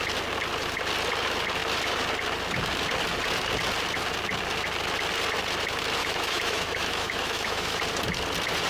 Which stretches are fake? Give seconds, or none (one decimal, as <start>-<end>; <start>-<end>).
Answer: 6.0-7.8